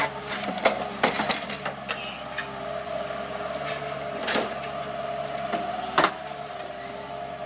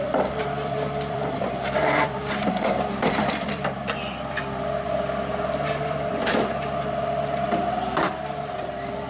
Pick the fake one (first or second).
second